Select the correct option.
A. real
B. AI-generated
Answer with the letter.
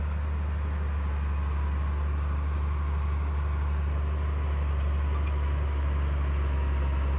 A